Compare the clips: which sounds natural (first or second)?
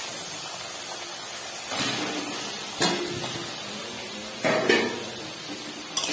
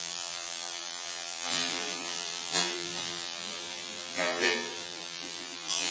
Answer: first